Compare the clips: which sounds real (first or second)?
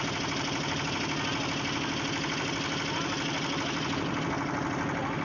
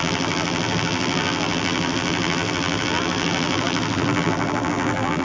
first